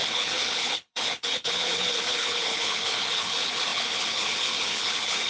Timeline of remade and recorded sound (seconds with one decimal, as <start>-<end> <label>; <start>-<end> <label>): 0.0-5.3 remade